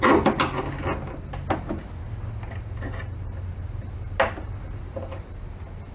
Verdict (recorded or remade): recorded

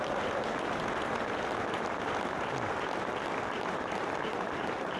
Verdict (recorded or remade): recorded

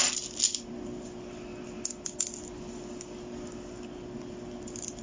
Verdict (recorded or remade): recorded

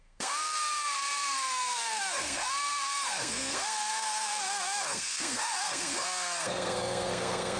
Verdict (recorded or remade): remade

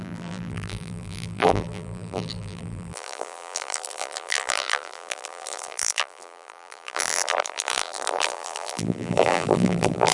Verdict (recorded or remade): remade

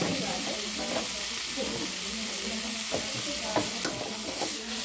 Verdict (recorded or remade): recorded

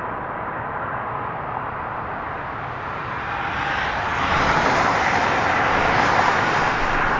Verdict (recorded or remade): recorded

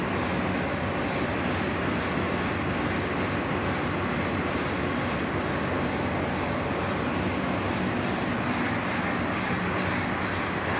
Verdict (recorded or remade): recorded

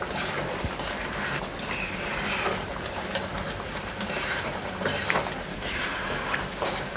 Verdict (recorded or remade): remade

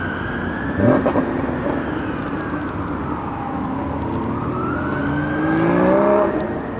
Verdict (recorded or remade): recorded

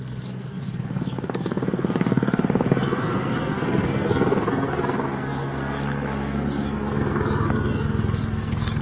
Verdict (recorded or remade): remade